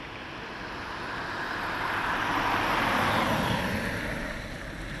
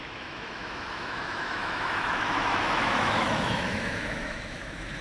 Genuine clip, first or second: first